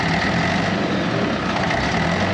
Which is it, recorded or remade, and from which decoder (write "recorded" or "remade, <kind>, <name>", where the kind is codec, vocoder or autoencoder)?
recorded